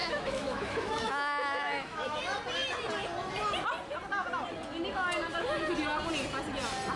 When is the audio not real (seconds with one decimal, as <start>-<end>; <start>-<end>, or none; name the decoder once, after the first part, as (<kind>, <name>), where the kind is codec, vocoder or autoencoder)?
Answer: 0.0-2.2 (autoencoder, DAC-VAE)